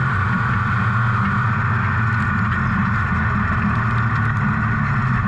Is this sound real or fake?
real